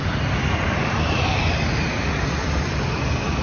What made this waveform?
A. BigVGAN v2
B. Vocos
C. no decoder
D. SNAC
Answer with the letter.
C